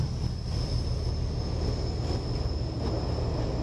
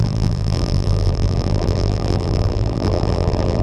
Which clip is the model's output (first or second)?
second